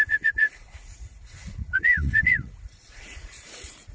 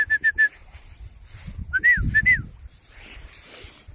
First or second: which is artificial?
first